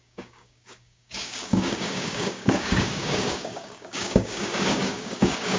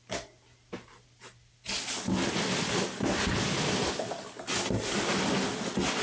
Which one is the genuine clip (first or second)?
second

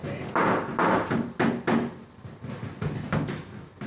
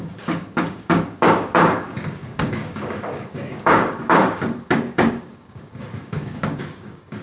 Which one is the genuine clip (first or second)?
first